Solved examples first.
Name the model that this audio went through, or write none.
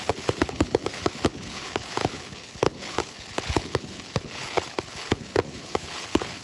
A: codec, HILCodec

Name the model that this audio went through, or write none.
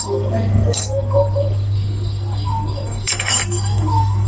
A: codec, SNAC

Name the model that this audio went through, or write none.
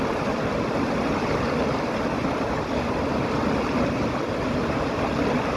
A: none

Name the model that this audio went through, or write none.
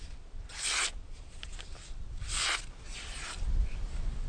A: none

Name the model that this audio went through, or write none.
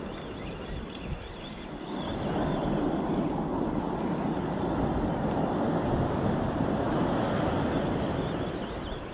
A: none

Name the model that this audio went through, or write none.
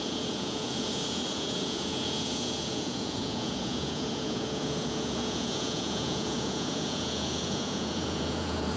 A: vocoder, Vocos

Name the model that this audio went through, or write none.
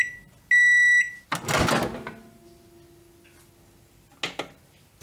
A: none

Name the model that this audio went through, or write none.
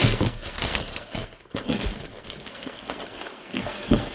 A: codec, SNAC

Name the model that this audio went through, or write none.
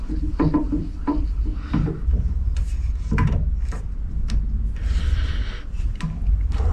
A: vocoder, BigVGAN v2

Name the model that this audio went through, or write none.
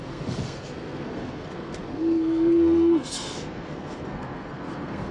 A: codec, SNAC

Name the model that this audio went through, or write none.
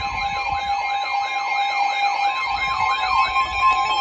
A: none